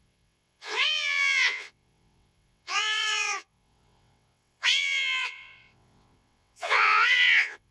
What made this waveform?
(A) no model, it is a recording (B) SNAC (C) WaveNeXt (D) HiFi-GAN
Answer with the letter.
C